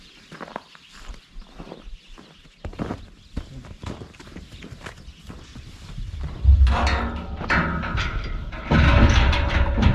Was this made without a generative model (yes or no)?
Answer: yes